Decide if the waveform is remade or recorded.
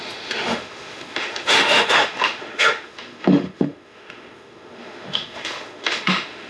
remade